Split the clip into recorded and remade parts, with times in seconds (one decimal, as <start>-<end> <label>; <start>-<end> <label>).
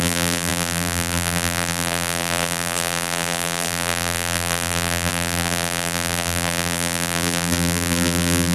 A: 0.0-8.5 remade